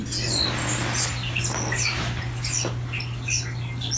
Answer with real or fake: real